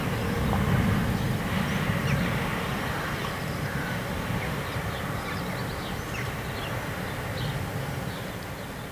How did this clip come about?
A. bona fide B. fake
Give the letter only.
A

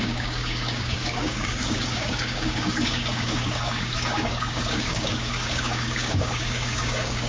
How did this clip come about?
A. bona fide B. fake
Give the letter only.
B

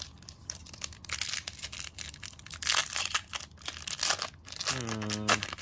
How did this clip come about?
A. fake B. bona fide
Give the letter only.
B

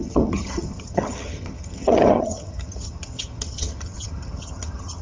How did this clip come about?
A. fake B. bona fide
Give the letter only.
A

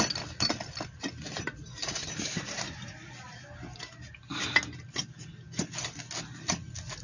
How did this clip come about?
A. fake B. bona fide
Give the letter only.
B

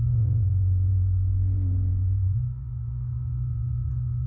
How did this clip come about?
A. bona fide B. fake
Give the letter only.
B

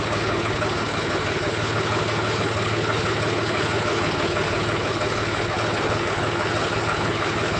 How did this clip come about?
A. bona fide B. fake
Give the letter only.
B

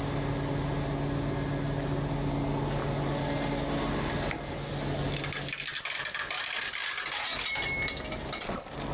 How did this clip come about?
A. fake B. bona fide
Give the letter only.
B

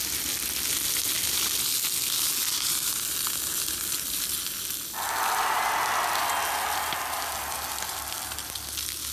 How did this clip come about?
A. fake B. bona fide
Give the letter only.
B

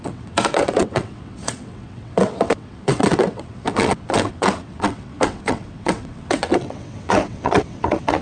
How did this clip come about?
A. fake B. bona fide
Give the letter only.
A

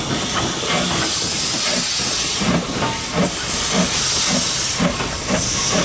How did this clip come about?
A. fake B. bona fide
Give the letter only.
B